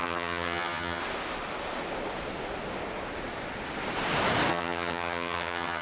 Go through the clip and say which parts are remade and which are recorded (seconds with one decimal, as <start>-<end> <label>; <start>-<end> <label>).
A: 0.0-1.0 remade; 1.0-4.5 recorded; 4.5-5.8 remade